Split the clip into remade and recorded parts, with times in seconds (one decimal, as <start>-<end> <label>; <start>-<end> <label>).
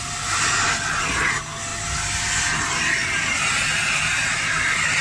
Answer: 0.0-5.0 recorded